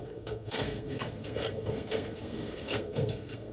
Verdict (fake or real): fake